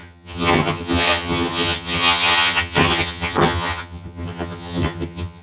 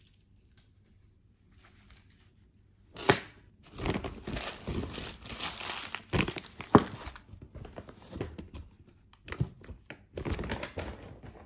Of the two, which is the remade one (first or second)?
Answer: first